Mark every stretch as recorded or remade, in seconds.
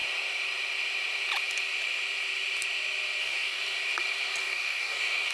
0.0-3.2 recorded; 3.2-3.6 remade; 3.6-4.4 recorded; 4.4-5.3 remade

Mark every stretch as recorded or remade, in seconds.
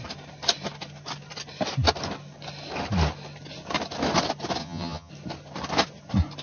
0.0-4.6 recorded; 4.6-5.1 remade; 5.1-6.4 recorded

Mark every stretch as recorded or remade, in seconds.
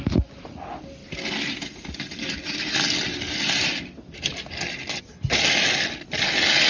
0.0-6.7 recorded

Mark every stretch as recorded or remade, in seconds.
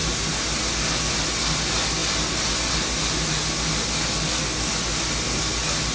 0.0-5.9 recorded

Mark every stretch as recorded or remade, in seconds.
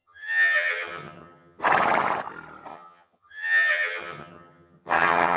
0.0-1.6 remade; 1.6-2.7 recorded; 2.7-5.4 remade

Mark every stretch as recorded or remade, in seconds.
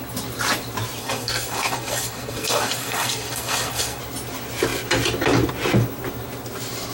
0.0-1.0 recorded; 1.0-4.0 remade; 4.0-6.9 recorded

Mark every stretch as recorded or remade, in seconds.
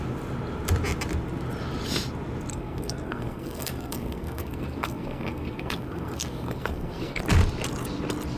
0.0-2.5 recorded; 2.5-7.2 remade; 7.2-8.4 recorded